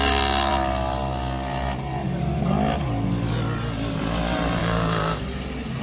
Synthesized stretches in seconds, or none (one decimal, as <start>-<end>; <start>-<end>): 4.6-5.2